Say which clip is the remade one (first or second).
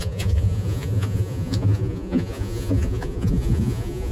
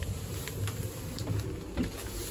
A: first